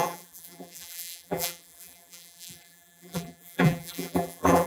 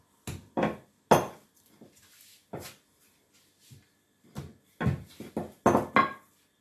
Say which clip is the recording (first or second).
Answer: second